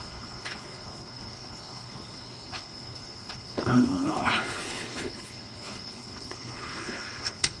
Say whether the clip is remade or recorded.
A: remade